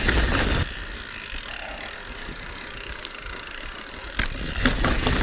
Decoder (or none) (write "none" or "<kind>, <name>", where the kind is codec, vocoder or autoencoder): vocoder, BigVGAN v2